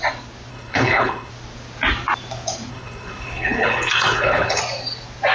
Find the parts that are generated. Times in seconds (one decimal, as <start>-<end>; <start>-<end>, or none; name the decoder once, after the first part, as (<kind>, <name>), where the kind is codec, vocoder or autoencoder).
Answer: 0.5-1.3 (codec, HILCodec); 2.7-4.6